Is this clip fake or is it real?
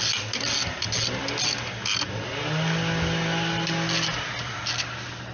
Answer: real